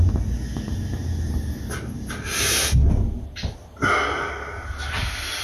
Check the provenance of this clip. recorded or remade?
recorded